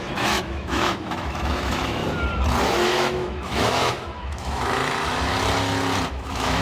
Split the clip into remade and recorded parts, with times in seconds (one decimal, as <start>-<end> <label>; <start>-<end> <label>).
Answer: 0.0-2.0 remade; 2.0-2.6 recorded; 2.6-4.8 remade; 4.8-6.1 recorded; 6.1-6.6 remade